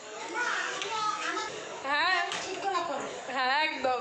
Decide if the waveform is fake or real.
fake